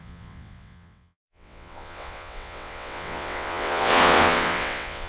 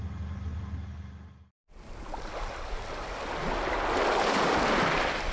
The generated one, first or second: first